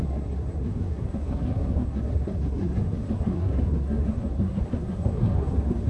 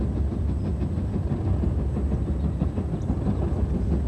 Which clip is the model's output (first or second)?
first